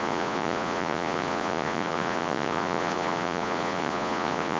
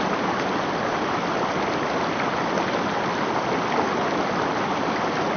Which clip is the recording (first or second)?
second